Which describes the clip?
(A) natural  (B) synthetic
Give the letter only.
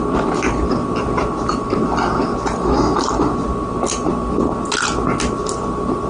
A